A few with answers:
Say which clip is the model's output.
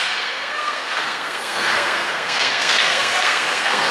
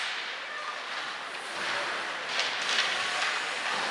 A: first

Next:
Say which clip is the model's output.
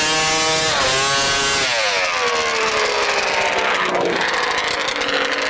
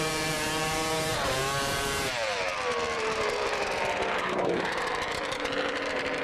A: second